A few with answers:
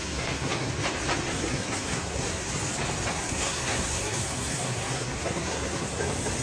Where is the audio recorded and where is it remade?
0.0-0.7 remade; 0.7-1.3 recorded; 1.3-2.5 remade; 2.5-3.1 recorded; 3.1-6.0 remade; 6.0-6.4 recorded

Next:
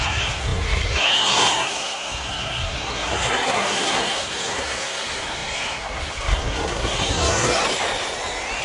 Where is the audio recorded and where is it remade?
0.0-7.6 remade; 7.6-8.6 recorded

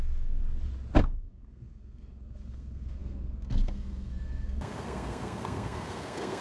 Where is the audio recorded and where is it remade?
0.0-0.4 remade; 0.4-1.0 recorded; 1.0-6.4 remade

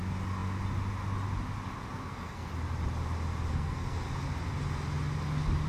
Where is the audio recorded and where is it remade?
0.0-1.9 recorded; 1.9-2.5 remade; 2.5-3.5 recorded; 3.5-4.0 remade; 4.0-5.7 recorded